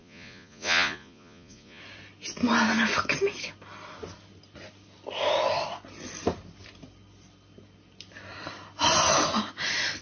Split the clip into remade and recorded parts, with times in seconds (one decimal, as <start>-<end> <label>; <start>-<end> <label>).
0.0-1.8 remade; 1.8-10.0 recorded